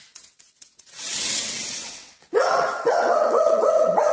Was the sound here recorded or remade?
remade